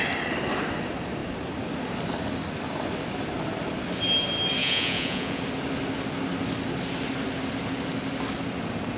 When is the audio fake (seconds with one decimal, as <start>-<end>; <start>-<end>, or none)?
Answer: 4.6-5.4